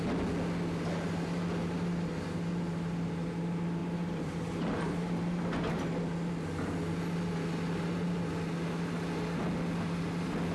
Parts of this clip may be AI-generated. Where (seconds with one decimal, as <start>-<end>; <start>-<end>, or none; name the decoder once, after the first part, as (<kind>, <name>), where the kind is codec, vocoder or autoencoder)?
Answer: 3.8-5.7 (vocoder, BigVGAN v2)